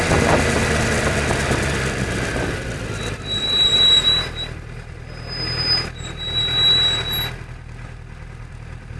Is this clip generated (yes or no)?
no